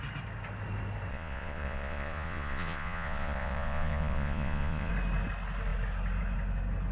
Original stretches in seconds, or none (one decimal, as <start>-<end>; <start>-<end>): 0.0-1.1; 4.9-6.9